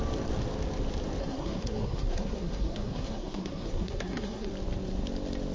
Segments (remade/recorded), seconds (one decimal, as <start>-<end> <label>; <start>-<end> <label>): 0.0-1.2 recorded; 1.2-4.5 remade; 4.5-5.5 recorded

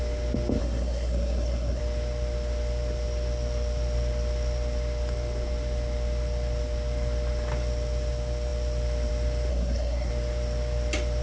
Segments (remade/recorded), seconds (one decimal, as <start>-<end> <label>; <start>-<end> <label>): 0.0-0.6 recorded; 0.6-1.8 remade; 1.8-9.5 recorded; 9.5-10.1 remade; 10.1-11.2 recorded

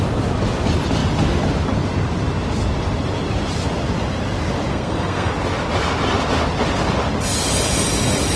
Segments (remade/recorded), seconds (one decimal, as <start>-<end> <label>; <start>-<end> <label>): 0.0-4.7 recorded; 4.7-5.3 remade; 5.3-8.4 recorded